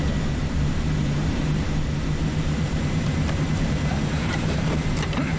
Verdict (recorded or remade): remade